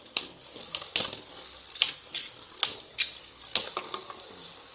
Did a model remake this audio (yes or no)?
no